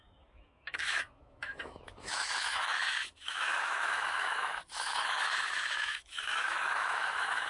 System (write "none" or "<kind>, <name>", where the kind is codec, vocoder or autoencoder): autoencoder, DAC-VAE